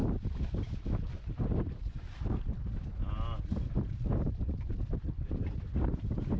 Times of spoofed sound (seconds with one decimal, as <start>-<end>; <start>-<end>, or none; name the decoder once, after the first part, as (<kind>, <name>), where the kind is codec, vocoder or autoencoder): none